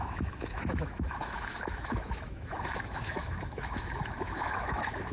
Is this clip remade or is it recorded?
remade